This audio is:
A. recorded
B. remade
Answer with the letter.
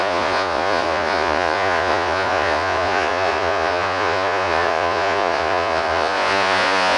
B